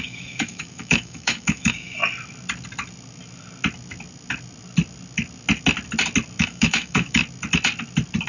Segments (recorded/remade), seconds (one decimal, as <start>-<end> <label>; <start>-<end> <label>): 0.0-2.0 remade; 2.0-6.4 recorded; 6.4-7.2 remade; 7.2-8.3 recorded